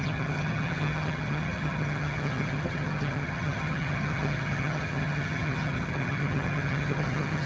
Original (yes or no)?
no